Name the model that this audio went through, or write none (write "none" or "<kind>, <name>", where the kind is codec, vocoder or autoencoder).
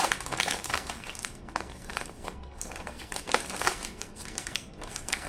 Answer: codec, SNAC